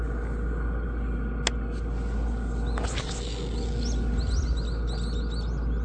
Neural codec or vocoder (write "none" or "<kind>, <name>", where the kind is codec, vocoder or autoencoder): none